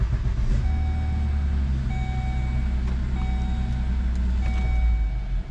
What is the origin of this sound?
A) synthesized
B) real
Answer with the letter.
B